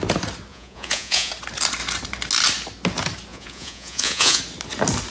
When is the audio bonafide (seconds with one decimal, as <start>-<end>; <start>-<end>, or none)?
0.0-0.5; 1.3-3.3; 4.4-5.1